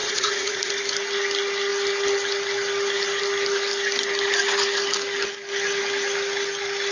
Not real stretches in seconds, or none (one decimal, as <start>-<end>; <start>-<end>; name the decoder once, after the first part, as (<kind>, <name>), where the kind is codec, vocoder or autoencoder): 0.0-0.7 (vocoder, Vocos)